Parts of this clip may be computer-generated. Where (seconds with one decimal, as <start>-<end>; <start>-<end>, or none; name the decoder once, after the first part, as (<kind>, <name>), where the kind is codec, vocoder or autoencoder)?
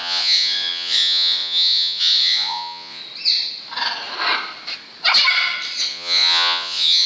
0.0-3.0 (vocoder, Vocos); 5.9-7.1